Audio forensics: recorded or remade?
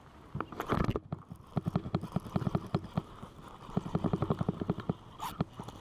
recorded